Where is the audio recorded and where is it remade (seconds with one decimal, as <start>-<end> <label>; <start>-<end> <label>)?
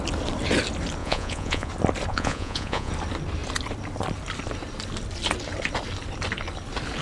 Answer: 0.0-1.0 recorded; 1.0-1.7 remade; 1.7-2.1 recorded; 2.1-2.9 remade; 2.9-7.0 recorded